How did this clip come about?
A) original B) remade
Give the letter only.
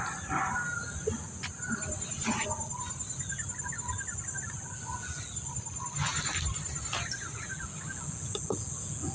A